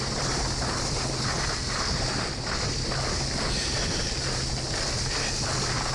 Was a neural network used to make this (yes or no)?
no